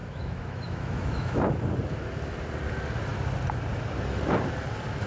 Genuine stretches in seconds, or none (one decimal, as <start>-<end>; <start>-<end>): 1.4-5.1